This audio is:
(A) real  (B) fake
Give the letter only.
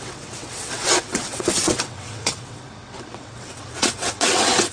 B